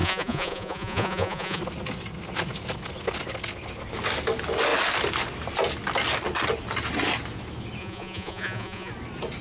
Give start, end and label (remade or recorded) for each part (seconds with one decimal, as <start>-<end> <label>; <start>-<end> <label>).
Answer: 0.0-1.6 remade; 1.6-7.8 recorded; 7.8-8.9 remade; 8.9-9.4 recorded